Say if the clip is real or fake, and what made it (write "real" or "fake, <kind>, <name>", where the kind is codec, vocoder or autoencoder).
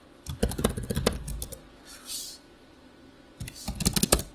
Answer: real